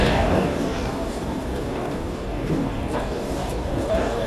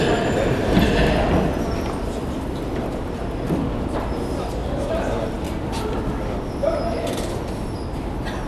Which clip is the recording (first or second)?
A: second